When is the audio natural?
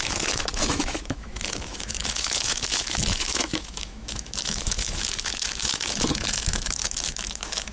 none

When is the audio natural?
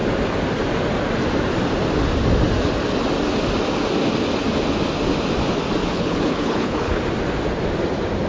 0.0-5.8; 7.0-8.3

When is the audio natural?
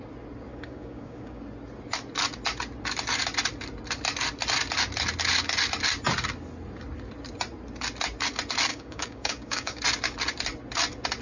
0.0-0.5; 1.4-8.7; 9.8-11.2